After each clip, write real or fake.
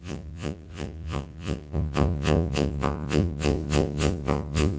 fake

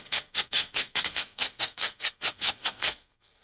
fake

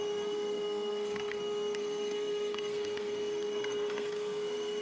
fake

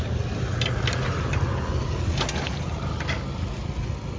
real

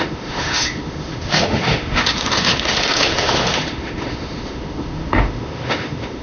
fake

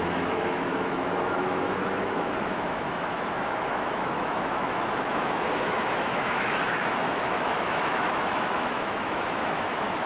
fake